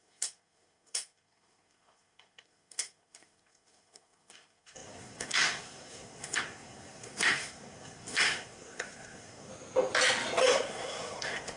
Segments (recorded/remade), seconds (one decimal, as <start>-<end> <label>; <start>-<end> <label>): 0.0-9.5 remade; 9.5-10.4 recorded; 10.4-11.6 remade